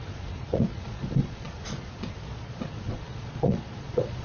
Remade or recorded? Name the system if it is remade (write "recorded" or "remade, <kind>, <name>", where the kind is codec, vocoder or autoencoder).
remade, vocoder, Vocos